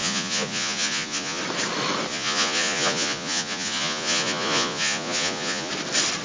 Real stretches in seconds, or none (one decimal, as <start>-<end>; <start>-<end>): 1.4-2.1; 5.7-6.2